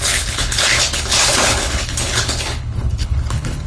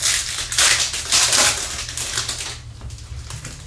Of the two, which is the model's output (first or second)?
first